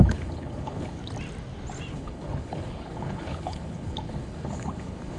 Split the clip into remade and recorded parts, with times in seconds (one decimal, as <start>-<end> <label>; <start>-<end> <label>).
0.0-1.0 remade; 1.0-1.9 recorded; 1.9-5.2 remade